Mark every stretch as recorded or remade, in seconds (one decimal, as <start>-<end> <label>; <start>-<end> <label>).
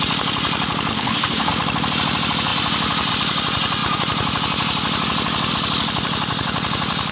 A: 0.0-0.9 recorded; 0.9-1.5 remade; 1.5-7.1 recorded